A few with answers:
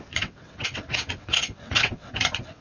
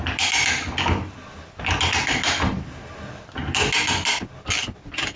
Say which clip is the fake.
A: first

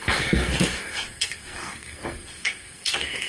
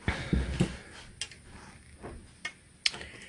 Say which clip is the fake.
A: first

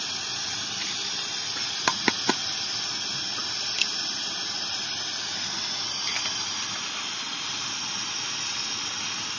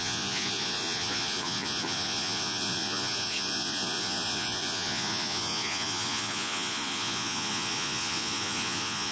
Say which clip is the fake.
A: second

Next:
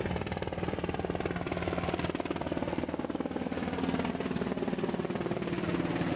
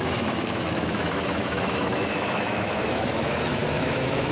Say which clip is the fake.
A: second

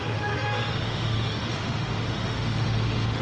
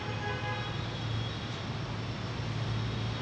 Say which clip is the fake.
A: first